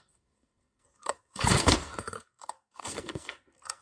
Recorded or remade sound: remade